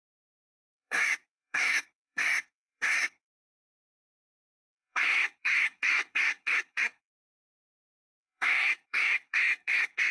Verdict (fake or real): fake